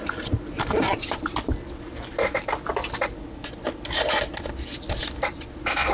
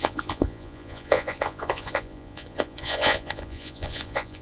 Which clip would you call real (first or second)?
first